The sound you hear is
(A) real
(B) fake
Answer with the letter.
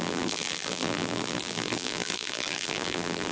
B